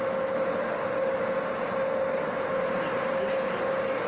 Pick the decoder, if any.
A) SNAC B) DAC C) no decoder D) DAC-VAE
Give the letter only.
C